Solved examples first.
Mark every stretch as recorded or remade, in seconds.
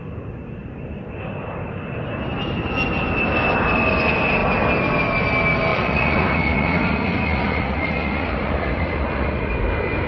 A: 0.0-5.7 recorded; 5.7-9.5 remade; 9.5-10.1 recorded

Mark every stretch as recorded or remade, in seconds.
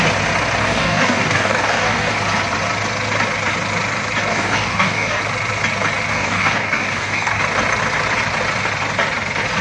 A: 0.0-0.6 recorded; 0.6-2.1 remade; 2.1-4.3 recorded; 4.3-5.2 remade; 5.2-6.1 recorded; 6.1-7.4 remade; 7.4-9.6 recorded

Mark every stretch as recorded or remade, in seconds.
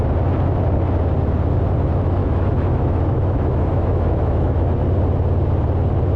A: 0.0-2.2 recorded; 2.2-4.7 remade; 4.7-6.2 recorded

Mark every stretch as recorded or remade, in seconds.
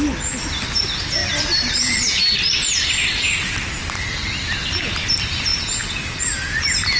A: 0.0-7.0 recorded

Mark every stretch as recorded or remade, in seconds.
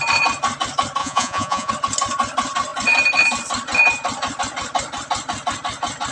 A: 0.0-1.0 recorded; 1.0-1.7 remade; 1.7-6.1 recorded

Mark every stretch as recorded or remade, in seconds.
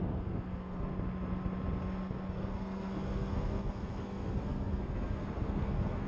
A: 0.0-0.9 remade; 0.9-2.3 recorded; 2.3-6.1 remade